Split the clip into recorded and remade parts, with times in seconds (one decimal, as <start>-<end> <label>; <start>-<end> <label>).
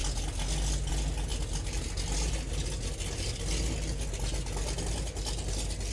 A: 0.0-5.9 recorded